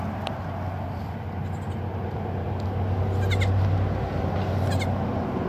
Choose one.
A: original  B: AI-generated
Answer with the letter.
A